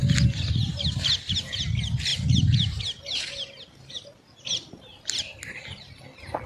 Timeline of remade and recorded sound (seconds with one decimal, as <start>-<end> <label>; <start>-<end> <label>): 0.0-2.1 recorded; 2.1-6.0 remade; 6.0-6.5 recorded